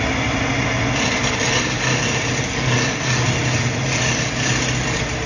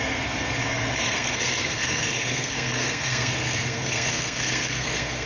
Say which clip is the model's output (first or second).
second